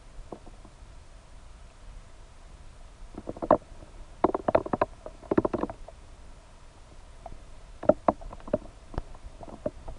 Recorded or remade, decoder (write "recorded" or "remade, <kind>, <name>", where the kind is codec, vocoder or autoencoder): recorded